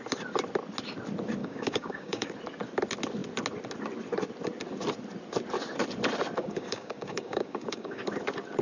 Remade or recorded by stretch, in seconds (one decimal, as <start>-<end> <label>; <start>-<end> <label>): 0.0-1.4 recorded; 1.4-2.3 remade; 2.3-6.4 recorded; 6.4-8.0 remade; 8.0-8.6 recorded